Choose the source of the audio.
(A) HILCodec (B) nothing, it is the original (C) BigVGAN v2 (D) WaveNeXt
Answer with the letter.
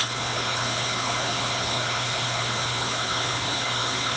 A